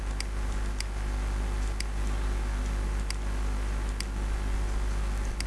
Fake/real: real